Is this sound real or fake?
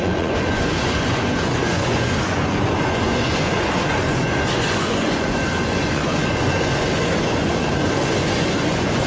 fake